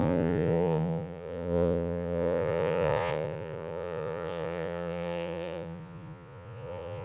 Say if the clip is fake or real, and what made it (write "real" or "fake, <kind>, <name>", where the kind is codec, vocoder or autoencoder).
fake, vocoder, Vocos